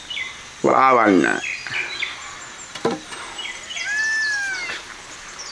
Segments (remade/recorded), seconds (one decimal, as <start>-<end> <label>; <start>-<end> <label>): 0.0-5.5 recorded